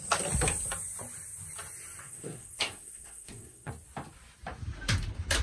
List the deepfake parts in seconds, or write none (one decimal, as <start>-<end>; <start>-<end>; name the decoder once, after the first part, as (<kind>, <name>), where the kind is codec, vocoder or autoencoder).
2.0-3.7 (codec, SNAC)